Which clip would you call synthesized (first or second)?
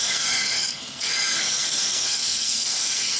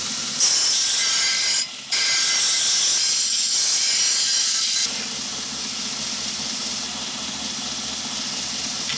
first